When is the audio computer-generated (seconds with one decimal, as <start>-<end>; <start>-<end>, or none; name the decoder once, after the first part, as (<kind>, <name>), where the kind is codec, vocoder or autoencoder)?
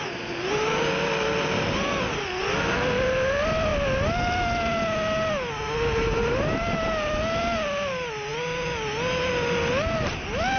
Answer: none